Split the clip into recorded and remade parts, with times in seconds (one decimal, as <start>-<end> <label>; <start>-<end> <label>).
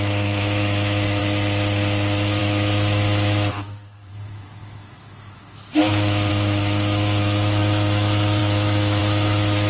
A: 0.0-1.2 remade; 1.2-2.4 recorded; 2.4-9.7 remade